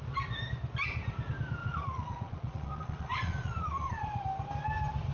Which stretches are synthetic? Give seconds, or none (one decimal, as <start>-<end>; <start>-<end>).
1.6-4.2